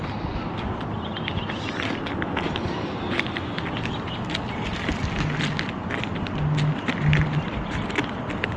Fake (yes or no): no